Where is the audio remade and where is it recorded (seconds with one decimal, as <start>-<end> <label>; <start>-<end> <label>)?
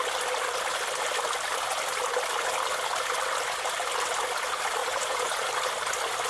0.0-4.8 recorded; 4.8-5.5 remade; 5.5-6.3 recorded